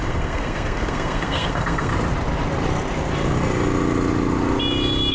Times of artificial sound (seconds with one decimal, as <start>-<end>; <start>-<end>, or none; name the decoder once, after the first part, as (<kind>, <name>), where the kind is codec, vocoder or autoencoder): 0.0-1.9 (codec, SNAC)